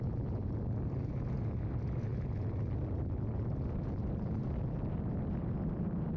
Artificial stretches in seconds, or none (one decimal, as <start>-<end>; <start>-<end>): none